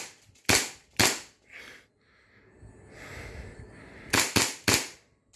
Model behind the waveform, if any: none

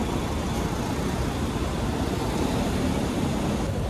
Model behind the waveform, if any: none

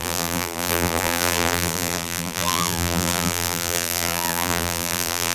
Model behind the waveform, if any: vocoder, BigVGAN v2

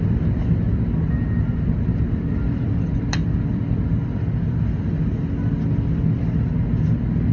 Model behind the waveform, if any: none